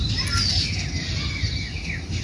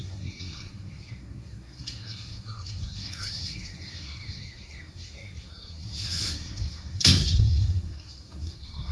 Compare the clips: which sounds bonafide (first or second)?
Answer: first